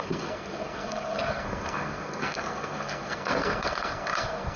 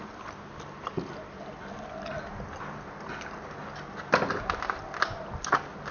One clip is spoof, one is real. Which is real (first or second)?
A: second